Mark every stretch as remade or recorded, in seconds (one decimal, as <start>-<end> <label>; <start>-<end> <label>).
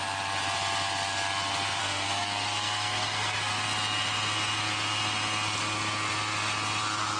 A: 0.0-1.8 recorded; 1.8-3.5 remade; 3.5-7.2 recorded